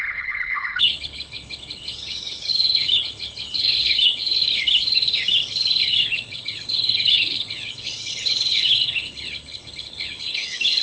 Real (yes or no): no